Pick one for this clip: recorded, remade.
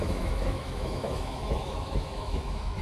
remade